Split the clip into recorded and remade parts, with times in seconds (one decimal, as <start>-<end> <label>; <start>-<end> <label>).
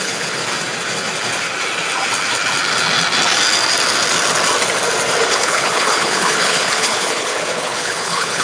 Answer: 0.0-0.4 remade; 0.4-5.3 recorded; 5.3-8.4 remade